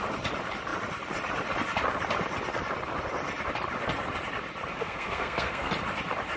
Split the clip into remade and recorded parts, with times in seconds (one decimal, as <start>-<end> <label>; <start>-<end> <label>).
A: 0.0-4.8 recorded; 4.8-5.7 remade; 5.7-6.4 recorded